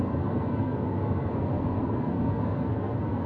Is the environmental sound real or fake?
fake